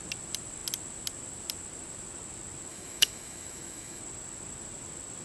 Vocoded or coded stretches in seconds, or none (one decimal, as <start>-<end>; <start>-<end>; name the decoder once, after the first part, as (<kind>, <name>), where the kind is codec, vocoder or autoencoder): 2.7-4.0 (autoencoder, DAC-VAE)